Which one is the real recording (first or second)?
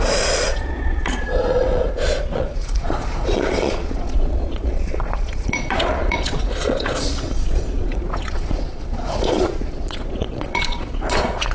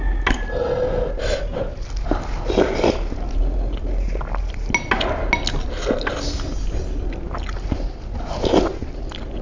second